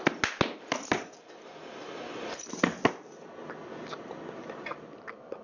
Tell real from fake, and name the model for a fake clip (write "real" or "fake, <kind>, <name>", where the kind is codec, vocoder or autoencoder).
real